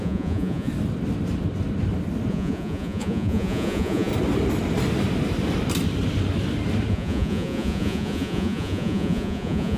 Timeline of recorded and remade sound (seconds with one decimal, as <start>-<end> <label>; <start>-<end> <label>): 0.0-0.7 remade; 0.7-2.3 recorded; 2.3-4.1 remade; 4.1-6.9 recorded; 6.9-9.8 remade